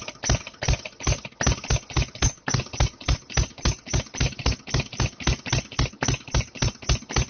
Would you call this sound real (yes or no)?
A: yes